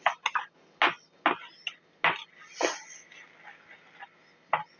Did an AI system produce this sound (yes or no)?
no